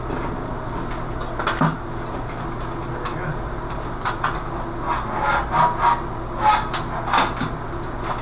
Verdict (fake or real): real